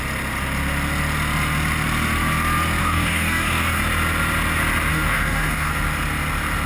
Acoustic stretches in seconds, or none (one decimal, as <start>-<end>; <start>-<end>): 0.0-2.8; 3.8-4.9; 5.7-6.7